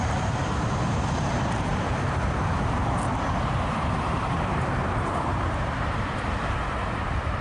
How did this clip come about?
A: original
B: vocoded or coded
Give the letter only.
B